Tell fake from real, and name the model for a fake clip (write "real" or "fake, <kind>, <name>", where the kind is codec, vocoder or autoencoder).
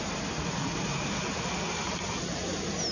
real